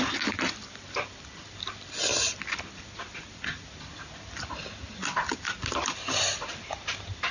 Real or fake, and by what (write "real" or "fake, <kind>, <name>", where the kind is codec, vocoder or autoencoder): real